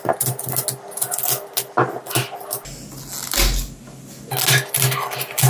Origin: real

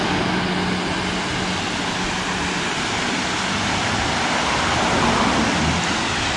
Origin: real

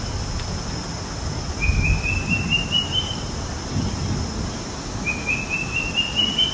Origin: real